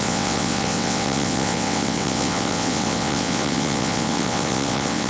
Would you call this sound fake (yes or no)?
yes